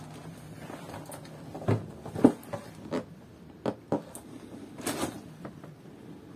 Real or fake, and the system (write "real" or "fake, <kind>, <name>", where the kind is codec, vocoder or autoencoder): real